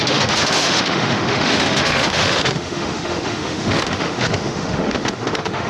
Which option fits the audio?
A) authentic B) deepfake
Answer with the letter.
B